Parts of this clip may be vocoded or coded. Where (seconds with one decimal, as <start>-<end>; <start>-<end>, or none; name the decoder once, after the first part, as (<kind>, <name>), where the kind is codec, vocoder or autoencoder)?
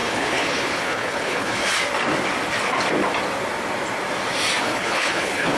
0.0-1.6 (codec, HILCodec); 4.6-5.6